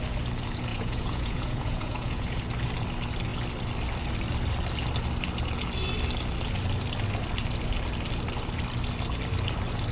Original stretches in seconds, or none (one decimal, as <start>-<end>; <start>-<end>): 0.0-0.7; 2.4-9.9